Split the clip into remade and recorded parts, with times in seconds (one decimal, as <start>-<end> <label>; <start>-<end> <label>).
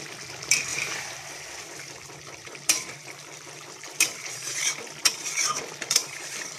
0.0-6.6 remade